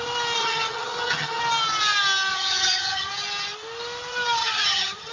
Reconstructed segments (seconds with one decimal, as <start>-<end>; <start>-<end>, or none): 0.4-1.4; 2.3-3.1; 4.4-5.1